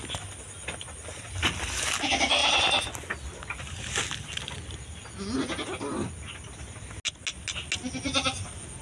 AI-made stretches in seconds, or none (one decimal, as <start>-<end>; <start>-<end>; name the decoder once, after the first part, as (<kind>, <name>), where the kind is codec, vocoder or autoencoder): none

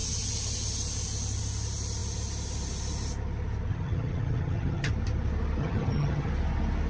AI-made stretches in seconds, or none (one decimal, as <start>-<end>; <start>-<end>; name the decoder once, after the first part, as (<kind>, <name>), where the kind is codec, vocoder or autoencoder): 3.7-4.9 (vocoder, HiFi-GAN); 5.6-6.3